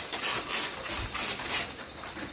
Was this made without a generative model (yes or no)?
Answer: yes